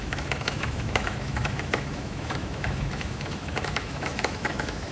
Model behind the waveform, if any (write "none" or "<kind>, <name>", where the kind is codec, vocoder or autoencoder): autoencoder, DAC-VAE